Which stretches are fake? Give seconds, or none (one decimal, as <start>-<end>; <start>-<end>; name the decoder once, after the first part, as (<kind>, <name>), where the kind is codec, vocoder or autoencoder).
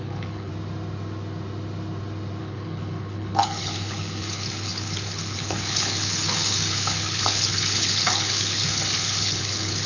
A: 0.0-0.5 (codec, HILCodec); 2.4-9.9